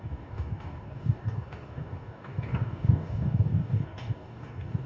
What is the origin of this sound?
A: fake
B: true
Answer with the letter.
A